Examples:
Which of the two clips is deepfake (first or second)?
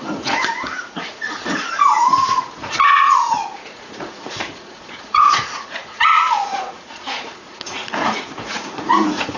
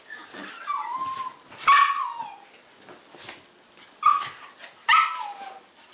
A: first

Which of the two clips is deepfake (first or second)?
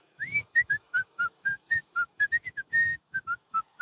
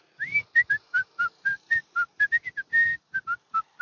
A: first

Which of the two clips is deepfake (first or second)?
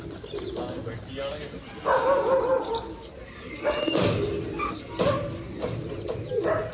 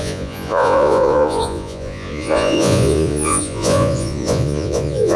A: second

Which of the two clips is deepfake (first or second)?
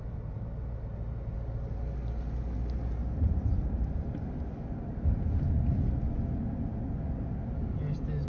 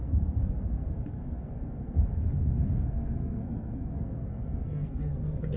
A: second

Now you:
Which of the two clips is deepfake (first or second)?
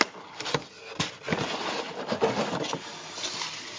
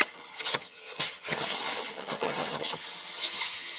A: second